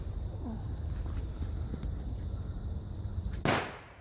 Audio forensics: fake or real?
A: real